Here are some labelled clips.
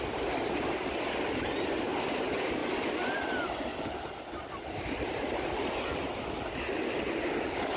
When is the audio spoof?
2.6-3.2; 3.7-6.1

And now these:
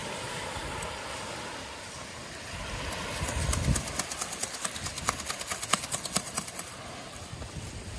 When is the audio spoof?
none

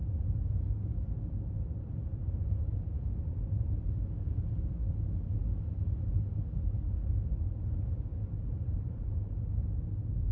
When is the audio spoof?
2.0-3.9; 8.1-9.6

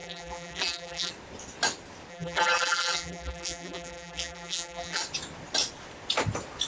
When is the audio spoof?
0.0-1.1; 2.1-5.0

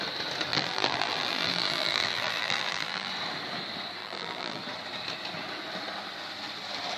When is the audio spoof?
0.5-3.1; 4.0-4.6

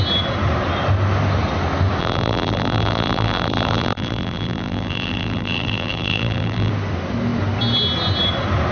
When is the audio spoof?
2.0-6.7

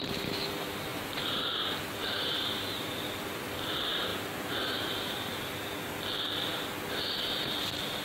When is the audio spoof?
0.9-1.6; 2.0-2.6

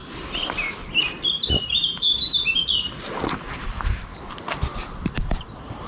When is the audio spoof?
0.7-1.9; 3.1-5.9